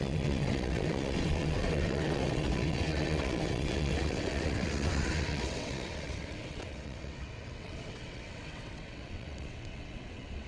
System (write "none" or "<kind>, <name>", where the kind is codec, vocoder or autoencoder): vocoder, WaveNeXt